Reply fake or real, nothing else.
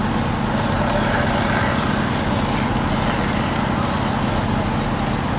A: real